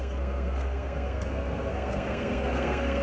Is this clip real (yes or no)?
no